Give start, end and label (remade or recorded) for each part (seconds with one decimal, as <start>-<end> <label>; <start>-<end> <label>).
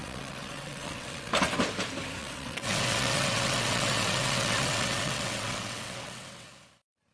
0.0-1.3 remade; 1.3-2.2 recorded; 2.2-6.5 remade; 6.5-7.1 recorded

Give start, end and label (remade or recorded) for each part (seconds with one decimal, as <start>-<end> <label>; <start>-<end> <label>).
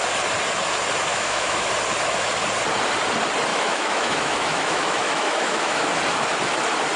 0.0-1.1 recorded; 1.1-1.7 remade; 1.7-3.5 recorded; 3.5-6.0 remade; 6.0-7.0 recorded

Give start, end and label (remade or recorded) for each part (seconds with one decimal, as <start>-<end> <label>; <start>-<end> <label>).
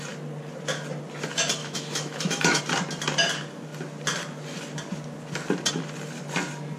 0.0-1.6 recorded; 1.6-2.6 remade; 2.6-6.8 recorded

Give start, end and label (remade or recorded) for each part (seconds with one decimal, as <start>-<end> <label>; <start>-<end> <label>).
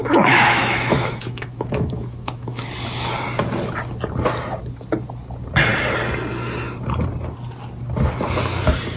0.0-2.6 remade; 2.6-9.0 recorded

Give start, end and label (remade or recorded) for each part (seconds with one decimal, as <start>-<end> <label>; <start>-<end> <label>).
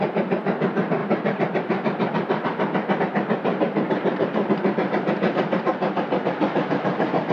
0.0-3.5 recorded; 3.5-4.7 remade; 4.7-5.7 recorded; 5.7-7.3 remade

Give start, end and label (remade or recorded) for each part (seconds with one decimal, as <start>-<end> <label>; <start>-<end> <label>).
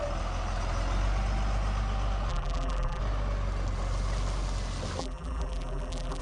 0.0-2.3 recorded; 2.3-3.0 remade; 3.0-5.0 recorded; 5.0-6.2 remade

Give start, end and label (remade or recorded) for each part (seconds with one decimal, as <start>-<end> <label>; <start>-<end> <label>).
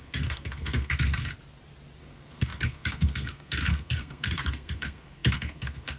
0.0-1.3 remade; 1.3-2.0 recorded; 2.0-6.0 remade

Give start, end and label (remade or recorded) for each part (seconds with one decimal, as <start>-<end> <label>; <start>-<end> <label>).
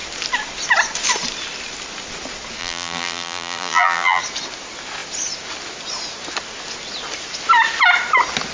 0.0-2.6 recorded; 2.6-4.2 remade; 4.2-8.5 recorded